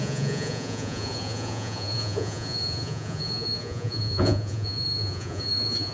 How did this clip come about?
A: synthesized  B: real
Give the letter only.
A